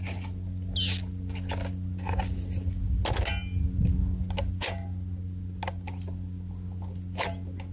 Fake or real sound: real